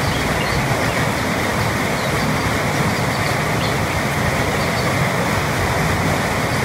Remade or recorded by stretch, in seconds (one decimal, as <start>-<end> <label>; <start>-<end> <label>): 0.0-6.6 recorded